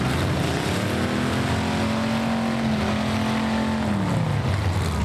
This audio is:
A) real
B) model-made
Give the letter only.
A